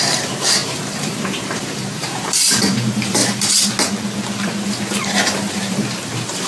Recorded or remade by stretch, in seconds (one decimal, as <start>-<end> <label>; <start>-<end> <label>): 0.0-3.2 remade; 3.2-5.0 recorded; 5.0-6.5 remade